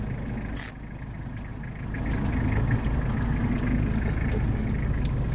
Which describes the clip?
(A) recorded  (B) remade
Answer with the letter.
A